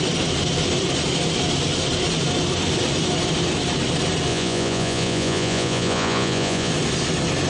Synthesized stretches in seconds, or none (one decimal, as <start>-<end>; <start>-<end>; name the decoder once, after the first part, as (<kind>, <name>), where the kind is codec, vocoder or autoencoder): 4.3-6.7 (vocoder, Vocos)